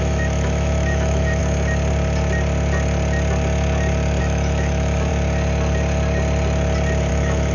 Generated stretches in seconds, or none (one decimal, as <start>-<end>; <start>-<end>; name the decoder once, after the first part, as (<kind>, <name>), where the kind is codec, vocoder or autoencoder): 0.0-1.4 (autoencoder, DAC-VAE); 4.2-5.1; 7.1-7.5